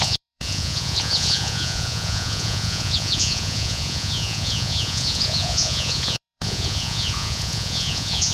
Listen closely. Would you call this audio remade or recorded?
remade